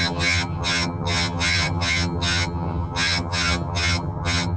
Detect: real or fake fake